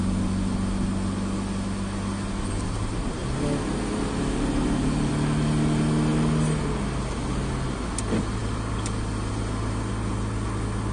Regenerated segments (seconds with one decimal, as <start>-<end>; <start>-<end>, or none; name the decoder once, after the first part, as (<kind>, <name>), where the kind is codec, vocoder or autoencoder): none